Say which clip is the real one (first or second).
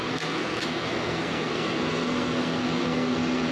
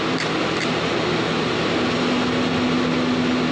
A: second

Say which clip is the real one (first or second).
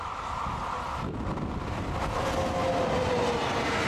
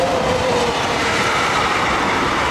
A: first